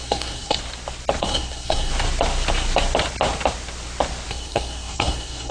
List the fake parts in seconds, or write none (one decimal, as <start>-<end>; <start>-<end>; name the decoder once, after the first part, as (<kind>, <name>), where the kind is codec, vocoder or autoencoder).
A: 0.0-0.6 (codec, SNAC); 1.2-1.9; 4.3-5.5